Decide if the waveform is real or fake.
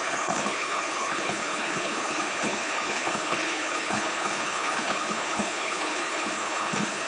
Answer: fake